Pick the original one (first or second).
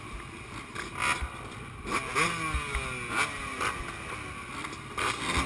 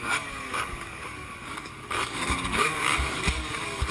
first